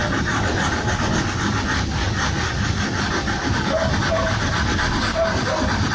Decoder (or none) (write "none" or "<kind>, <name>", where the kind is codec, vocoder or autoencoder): none